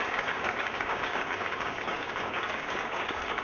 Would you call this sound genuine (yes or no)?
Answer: no